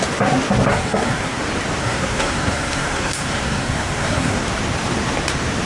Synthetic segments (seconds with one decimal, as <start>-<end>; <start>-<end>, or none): 0.7-1.4; 1.8-4.4